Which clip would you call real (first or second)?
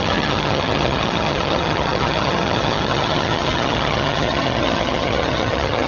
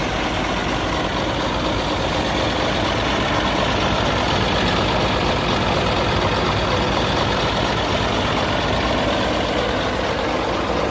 second